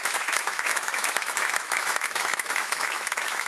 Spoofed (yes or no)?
yes